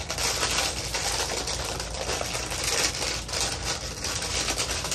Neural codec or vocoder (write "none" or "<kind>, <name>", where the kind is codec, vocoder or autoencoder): none